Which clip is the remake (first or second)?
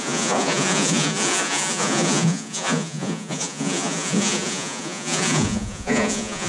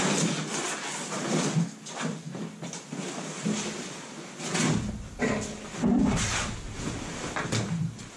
first